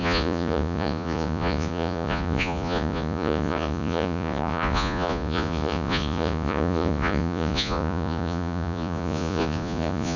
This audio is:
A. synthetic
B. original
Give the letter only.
A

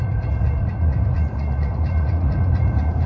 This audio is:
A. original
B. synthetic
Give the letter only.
B